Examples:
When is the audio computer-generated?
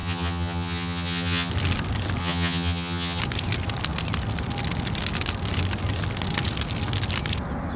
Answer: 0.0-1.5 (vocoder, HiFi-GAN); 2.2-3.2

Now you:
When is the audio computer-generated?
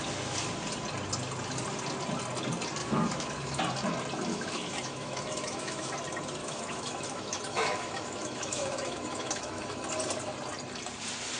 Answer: 2.8-3.6 (autoencoder, DAC-VAE); 4.3-5.9; 6.4-9.9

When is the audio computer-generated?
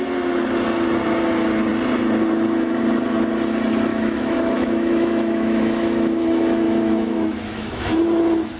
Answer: 3.9-8.0 (autoencoder, DAC-VAE)